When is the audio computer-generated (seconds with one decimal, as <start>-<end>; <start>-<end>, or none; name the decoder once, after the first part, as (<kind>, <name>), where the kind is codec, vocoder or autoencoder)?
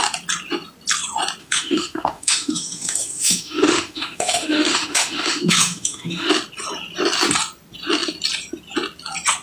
1.4-6.3 (autoencoder, DAC-VAE)